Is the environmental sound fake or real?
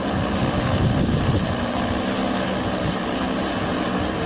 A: real